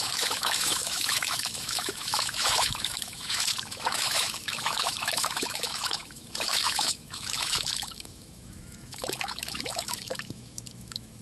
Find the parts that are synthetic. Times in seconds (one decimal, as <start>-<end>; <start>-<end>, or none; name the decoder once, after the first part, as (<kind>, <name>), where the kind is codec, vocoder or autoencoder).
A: 0.0-11.2 (autoencoder, DAC-VAE)